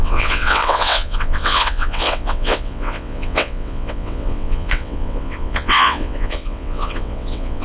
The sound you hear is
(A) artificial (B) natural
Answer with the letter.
A